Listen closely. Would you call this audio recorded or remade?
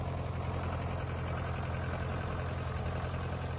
recorded